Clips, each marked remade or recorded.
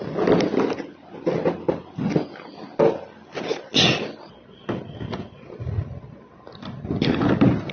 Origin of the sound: recorded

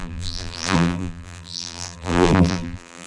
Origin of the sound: remade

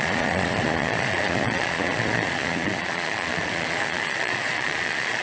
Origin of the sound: remade